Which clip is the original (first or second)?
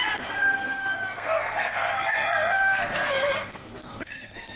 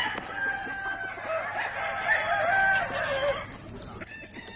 second